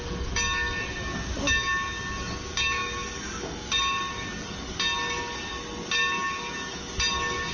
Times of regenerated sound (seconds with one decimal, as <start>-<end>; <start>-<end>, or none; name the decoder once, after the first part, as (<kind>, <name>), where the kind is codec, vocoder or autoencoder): none